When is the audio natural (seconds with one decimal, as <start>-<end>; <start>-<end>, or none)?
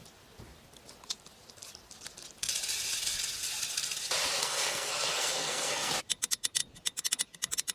0.0-4.4; 5.9-7.7